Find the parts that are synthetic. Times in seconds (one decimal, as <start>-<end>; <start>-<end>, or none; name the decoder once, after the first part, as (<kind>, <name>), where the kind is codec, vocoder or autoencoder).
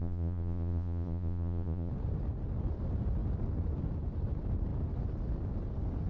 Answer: 0.0-1.9 (vocoder, Vocos)